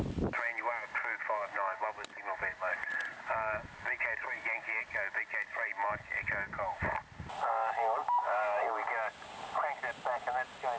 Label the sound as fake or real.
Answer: real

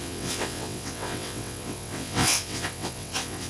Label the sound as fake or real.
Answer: fake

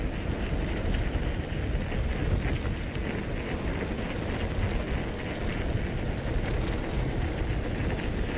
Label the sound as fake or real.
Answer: real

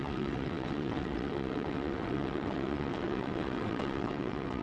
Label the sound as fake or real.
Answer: fake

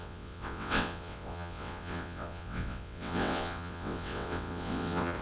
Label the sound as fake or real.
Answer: fake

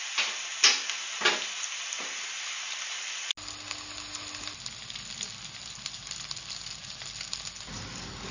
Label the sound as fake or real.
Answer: real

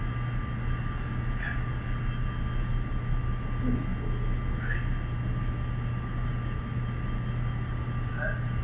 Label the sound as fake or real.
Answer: real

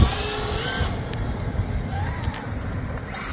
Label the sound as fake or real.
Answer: real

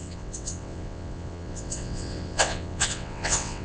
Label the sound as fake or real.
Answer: fake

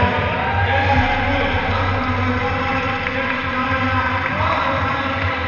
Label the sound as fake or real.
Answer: real